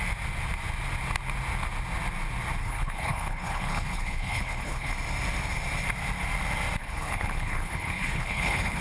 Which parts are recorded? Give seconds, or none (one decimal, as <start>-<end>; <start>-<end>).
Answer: 0.0-2.6; 4.9-6.8